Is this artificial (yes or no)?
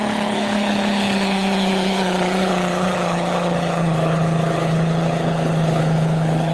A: yes